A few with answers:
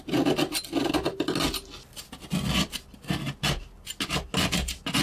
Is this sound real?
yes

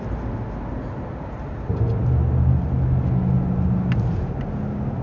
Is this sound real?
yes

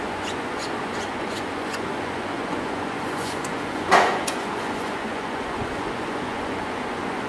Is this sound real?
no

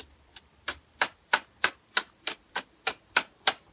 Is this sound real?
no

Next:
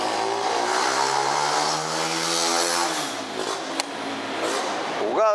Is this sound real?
yes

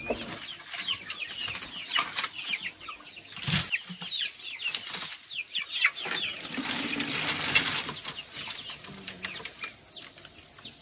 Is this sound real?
yes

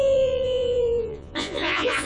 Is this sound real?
no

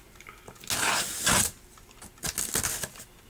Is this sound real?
yes